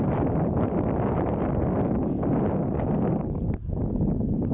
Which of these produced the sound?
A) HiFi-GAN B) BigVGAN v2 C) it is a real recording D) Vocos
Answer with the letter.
C